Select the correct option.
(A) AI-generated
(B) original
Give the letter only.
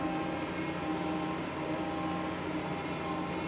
B